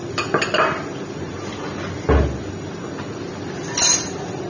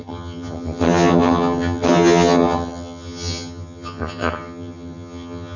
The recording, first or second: first